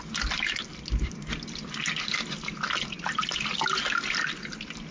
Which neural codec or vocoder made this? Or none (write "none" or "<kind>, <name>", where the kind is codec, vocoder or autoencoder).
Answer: none